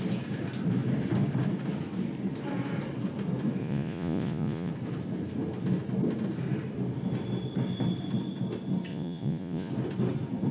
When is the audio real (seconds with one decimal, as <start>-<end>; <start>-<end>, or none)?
0.0-3.6; 4.7-8.9; 9.7-10.5